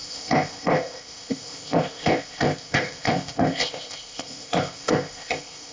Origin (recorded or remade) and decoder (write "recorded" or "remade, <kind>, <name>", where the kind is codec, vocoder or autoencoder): remade, codec, ZipCodec